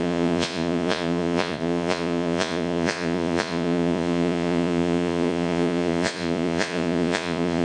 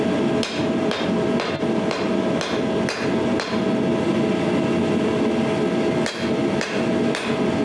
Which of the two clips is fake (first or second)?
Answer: first